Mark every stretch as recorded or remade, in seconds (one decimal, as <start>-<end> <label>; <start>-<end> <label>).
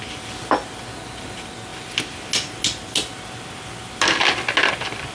0.0-5.1 recorded